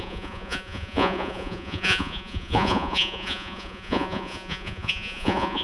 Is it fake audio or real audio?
fake